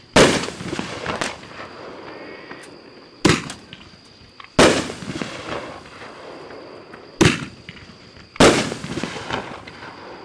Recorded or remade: recorded